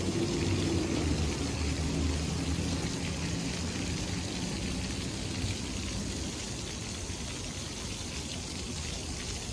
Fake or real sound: real